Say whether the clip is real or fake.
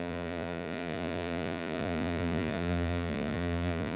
fake